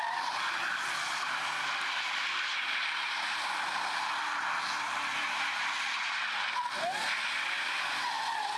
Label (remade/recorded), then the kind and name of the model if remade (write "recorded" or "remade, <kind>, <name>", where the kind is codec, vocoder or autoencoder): recorded